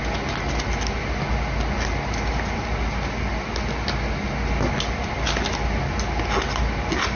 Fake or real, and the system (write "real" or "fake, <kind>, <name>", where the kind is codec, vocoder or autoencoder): real